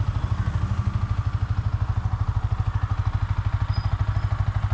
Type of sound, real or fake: real